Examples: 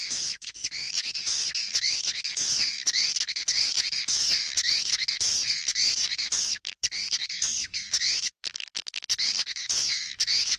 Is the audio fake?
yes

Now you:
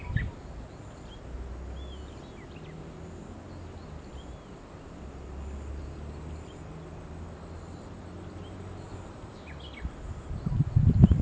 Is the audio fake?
no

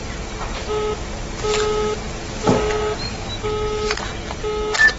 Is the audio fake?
no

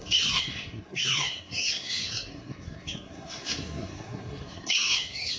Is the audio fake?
yes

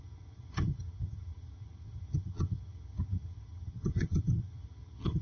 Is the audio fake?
yes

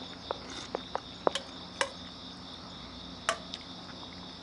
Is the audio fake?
no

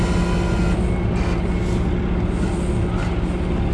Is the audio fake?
no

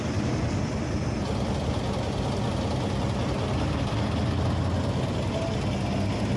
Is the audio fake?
no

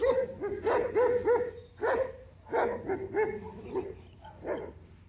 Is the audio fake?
no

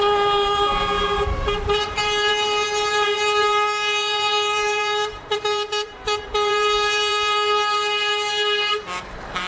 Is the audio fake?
yes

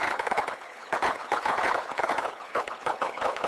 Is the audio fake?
yes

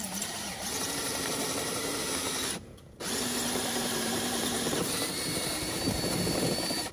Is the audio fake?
yes